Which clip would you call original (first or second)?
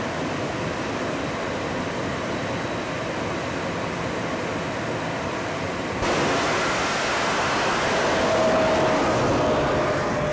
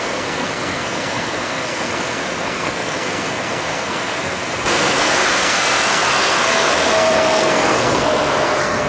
first